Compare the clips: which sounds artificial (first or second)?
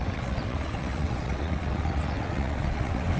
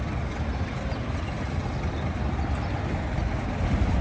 first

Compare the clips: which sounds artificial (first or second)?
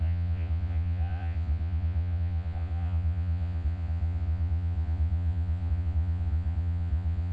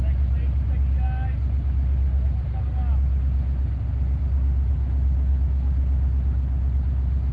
first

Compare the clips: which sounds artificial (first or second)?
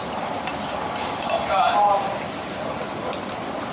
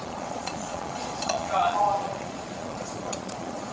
second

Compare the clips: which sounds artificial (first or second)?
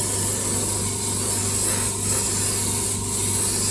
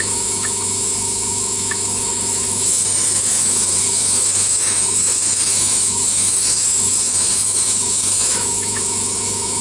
second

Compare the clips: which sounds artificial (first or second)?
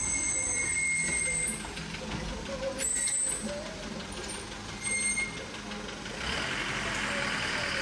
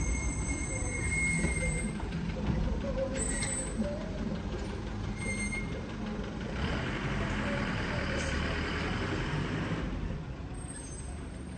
second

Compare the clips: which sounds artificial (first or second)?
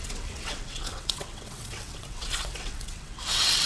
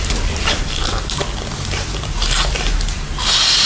first